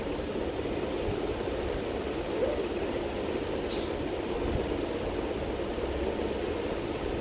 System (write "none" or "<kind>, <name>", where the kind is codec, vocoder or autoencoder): none